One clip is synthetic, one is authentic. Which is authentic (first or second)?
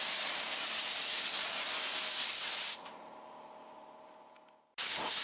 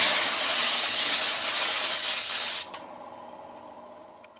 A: first